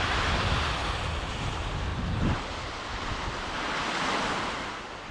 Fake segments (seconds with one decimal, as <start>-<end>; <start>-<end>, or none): 0.0-0.8; 1.3-1.9; 3.0-3.8; 4.6-5.1